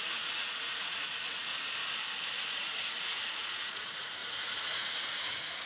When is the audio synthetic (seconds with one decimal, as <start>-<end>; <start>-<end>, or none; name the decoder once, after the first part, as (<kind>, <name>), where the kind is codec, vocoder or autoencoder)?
0.0-1.5 (vocoder, Vocos); 2.5-5.7